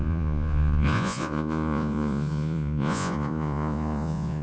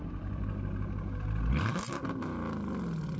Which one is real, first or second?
second